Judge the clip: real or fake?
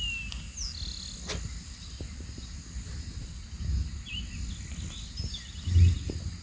real